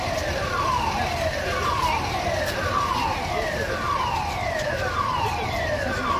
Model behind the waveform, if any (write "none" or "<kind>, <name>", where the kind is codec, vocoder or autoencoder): none